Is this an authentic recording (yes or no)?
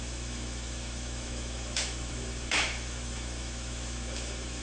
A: no